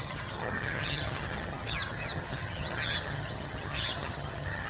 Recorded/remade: remade